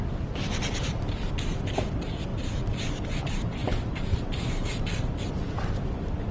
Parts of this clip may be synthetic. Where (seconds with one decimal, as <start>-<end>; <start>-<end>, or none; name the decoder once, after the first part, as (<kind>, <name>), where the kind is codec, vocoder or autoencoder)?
0.0-2.3 (vocoder, BigVGAN v2); 3.2-6.3